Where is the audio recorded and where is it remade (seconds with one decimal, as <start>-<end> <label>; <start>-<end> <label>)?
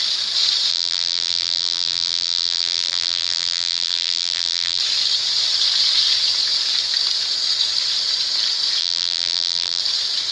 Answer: 0.0-0.7 recorded; 0.7-4.8 remade; 4.8-8.8 recorded; 8.8-9.8 remade; 9.8-10.3 recorded